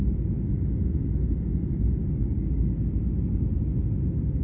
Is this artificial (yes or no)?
no